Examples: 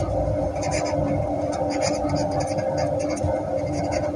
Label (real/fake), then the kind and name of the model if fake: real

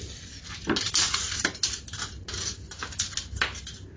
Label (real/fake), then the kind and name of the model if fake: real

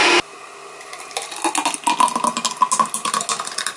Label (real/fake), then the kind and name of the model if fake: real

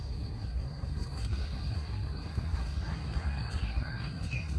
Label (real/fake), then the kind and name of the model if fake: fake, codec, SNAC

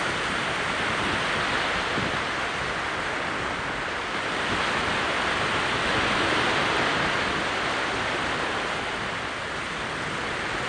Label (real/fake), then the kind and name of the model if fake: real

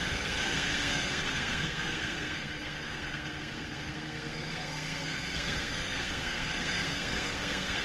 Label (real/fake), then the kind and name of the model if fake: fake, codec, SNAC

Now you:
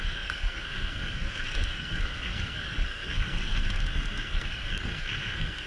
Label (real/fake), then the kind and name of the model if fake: fake, codec, SNAC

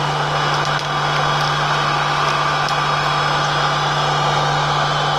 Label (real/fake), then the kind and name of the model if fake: real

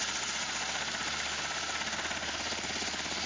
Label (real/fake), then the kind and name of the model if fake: real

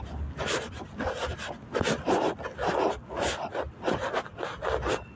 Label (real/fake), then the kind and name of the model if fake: real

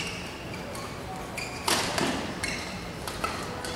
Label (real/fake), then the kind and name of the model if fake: real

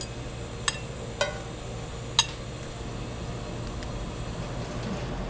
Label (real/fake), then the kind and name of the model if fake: real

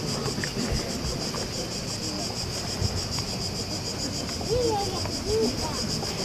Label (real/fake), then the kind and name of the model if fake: real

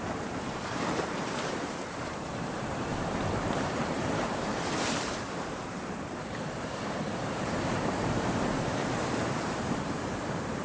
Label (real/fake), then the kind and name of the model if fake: fake, vocoder, BigVGAN v2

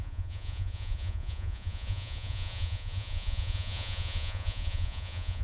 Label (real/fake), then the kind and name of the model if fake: fake, vocoder, Vocos